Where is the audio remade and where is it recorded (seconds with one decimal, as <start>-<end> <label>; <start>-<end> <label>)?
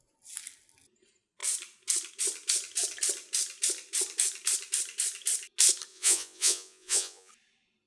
0.0-5.9 recorded; 5.9-7.3 remade; 7.3-7.9 recorded